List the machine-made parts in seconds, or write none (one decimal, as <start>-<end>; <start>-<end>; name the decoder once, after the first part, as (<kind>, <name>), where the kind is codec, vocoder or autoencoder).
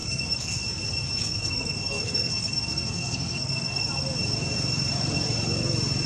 0.0-0.6 (codec, SNAC); 1.2-3.8